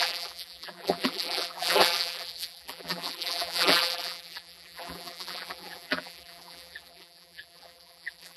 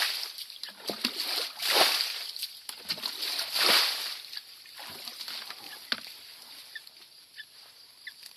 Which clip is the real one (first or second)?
second